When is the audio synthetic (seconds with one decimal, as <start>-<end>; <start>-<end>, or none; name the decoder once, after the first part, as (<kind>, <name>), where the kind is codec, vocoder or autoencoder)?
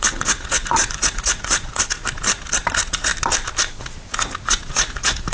0.0-2.0 (vocoder, Vocos); 2.7-3.1; 3.8-5.3